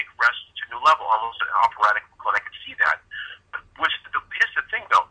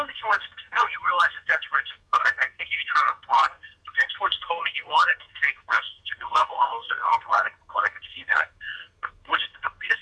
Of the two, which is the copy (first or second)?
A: second